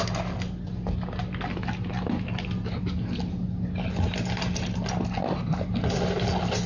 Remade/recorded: recorded